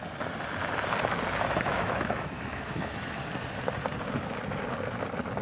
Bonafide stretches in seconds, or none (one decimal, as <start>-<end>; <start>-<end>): 0.0-1.7; 3.2-5.4